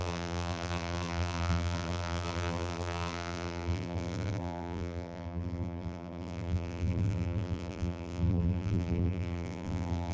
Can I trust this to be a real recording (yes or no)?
no